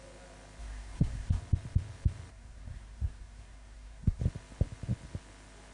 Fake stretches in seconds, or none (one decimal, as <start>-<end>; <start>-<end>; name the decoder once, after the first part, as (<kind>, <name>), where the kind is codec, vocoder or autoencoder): 0.6-1.4 (codec, SNAC); 2.3-4.2